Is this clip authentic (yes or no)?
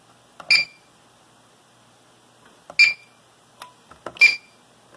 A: yes